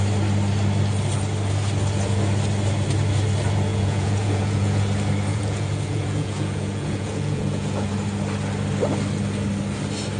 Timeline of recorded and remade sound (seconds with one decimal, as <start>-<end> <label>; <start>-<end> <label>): 0.0-3.7 recorded; 3.7-4.8 remade; 4.8-5.3 recorded; 5.3-7.9 remade; 7.9-10.2 recorded